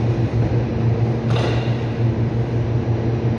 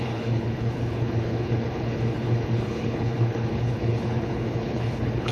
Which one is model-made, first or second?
second